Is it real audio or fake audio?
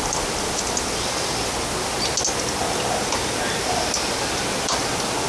real